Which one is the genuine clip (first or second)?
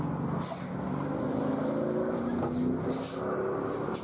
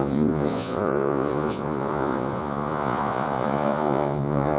first